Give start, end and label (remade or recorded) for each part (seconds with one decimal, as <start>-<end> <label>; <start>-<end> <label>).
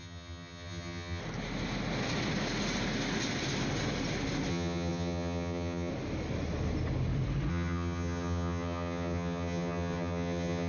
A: 0.0-1.2 remade; 1.2-4.5 recorded; 4.5-5.9 remade; 5.9-7.5 recorded; 7.5-10.7 remade